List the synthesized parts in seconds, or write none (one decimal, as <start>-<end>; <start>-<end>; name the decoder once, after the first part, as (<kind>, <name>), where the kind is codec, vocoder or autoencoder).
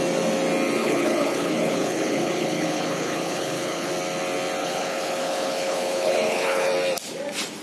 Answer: 0.8-3.9 (codec, HILCodec); 4.6-6.7